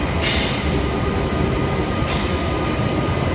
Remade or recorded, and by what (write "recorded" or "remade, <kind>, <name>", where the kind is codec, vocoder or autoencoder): recorded